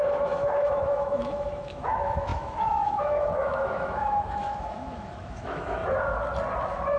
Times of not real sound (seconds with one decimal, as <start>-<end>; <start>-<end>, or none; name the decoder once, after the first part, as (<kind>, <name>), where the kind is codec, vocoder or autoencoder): 0.0-5.8 (autoencoder, DAC-VAE); 6.6-7.0